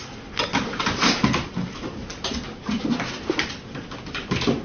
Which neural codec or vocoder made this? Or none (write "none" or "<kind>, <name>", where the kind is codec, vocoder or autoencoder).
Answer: none